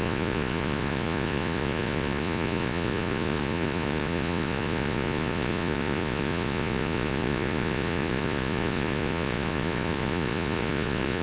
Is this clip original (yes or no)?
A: no